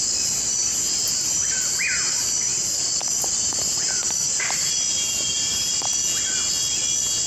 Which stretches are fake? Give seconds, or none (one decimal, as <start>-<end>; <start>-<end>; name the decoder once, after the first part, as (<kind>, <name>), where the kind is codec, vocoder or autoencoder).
none